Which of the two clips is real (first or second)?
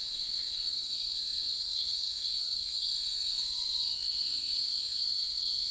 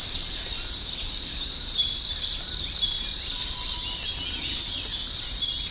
second